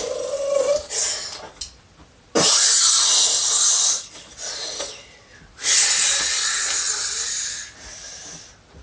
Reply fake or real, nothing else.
real